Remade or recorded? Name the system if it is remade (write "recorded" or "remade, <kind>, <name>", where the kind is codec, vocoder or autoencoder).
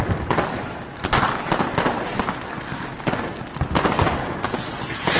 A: recorded